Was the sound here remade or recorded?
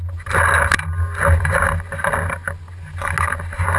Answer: recorded